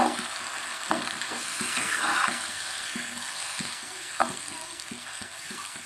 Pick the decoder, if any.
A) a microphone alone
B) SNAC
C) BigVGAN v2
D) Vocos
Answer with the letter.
B